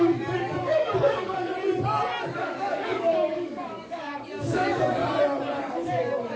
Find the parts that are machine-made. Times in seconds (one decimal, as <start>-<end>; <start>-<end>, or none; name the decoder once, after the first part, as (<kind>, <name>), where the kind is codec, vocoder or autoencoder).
0.0-1.5 (codec, DAC); 2.3-5.0; 5.6-6.4